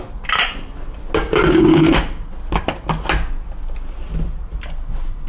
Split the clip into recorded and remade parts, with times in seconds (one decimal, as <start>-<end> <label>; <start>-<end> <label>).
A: 0.0-1.2 recorded; 1.2-1.8 remade; 1.8-5.3 recorded